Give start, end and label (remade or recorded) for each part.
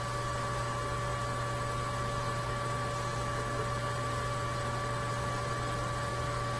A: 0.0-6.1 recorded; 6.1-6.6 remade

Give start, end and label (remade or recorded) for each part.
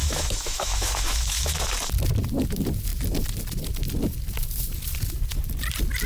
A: 0.0-1.7 remade; 1.7-6.1 recorded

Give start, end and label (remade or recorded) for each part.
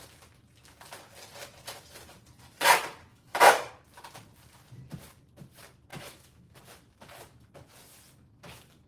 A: 0.0-3.1 recorded; 3.1-3.7 remade; 3.7-5.9 recorded; 5.9-6.6 remade; 6.6-8.9 recorded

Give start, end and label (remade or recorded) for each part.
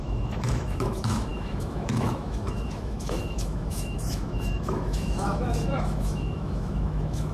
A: 0.0-7.3 remade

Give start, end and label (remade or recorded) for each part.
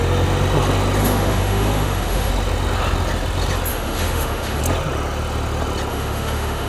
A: 0.0-1.0 recorded; 1.0-2.3 remade; 2.3-3.7 recorded; 3.7-4.6 remade; 4.6-5.9 recorded; 5.9-6.7 remade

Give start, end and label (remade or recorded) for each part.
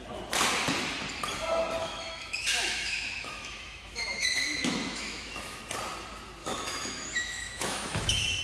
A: 0.0-1.8 recorded; 1.8-5.6 remade; 5.6-6.4 recorded; 6.4-8.4 remade